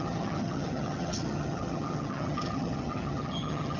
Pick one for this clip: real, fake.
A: fake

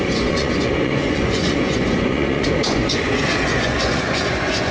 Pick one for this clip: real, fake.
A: fake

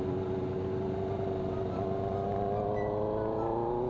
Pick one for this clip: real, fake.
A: real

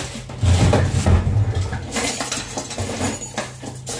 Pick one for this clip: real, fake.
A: real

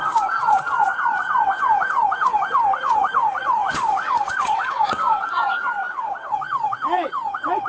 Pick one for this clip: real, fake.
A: fake